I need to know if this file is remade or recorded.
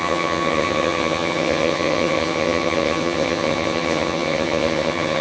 remade